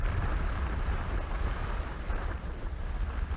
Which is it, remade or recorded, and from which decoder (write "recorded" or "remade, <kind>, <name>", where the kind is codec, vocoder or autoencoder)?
recorded